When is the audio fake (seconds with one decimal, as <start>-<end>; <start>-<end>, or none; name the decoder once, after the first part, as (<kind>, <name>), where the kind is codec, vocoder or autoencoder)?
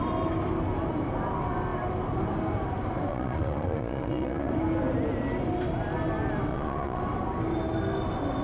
3.1-4.5 (vocoder, Vocos); 6.5-7.0